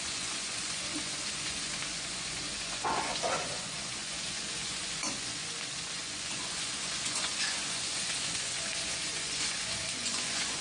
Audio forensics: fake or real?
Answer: fake